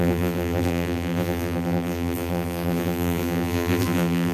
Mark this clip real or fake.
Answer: fake